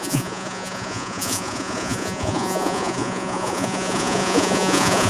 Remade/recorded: remade